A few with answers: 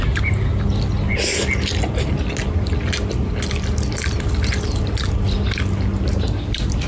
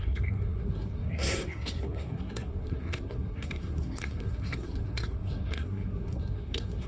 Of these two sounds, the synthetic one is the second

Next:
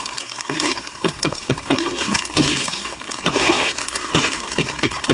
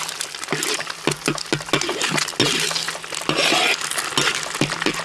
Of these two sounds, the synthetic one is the first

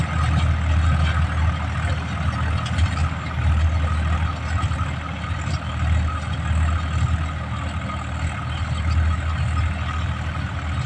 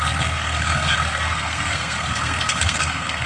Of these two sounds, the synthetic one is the second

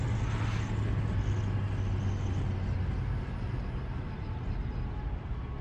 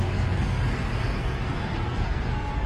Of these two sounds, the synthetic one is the second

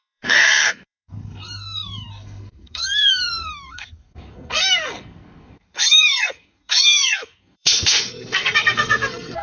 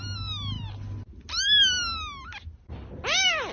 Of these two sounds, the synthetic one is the first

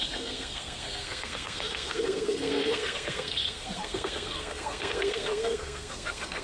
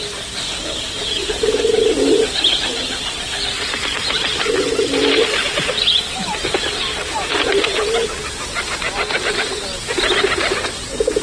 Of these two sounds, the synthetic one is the first